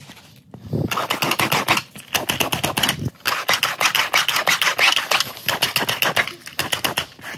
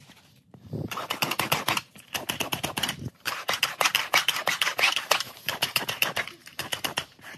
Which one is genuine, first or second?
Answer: first